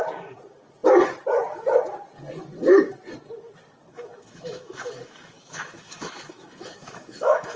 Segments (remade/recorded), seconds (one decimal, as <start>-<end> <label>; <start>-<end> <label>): 0.0-3.9 recorded; 3.9-7.6 remade